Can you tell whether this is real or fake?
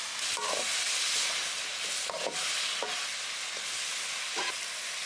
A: real